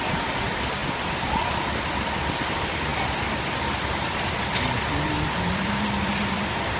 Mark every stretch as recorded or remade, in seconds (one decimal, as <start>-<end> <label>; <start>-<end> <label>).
0.0-0.8 remade; 0.8-2.0 recorded; 2.0-2.9 remade; 2.9-5.4 recorded; 5.4-6.8 remade